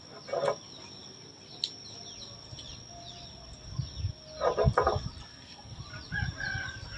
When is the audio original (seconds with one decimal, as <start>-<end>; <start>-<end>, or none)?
0.0-5.3; 5.8-7.0